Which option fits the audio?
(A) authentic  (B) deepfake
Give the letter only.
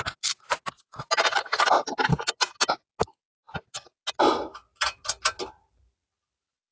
A